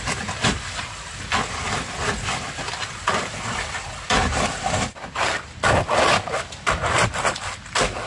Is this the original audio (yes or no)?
yes